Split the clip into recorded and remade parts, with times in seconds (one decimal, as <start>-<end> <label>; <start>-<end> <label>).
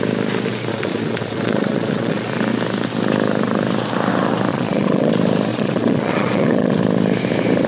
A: 0.0-0.7 recorded; 0.7-2.3 remade; 2.3-4.5 recorded; 4.5-5.1 remade; 5.1-5.5 recorded; 5.5-6.8 remade; 6.8-7.7 recorded